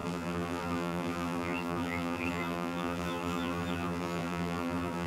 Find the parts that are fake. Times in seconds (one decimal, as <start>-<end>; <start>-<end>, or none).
0.0-5.1